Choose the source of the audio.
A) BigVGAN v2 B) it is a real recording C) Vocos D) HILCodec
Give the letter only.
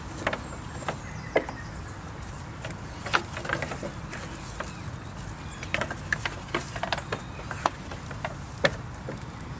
B